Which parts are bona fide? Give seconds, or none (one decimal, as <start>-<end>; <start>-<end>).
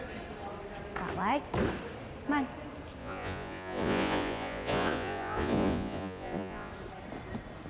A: 0.0-3.0; 6.7-7.7